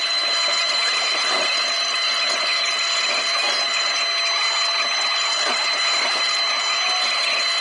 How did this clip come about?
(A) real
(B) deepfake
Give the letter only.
A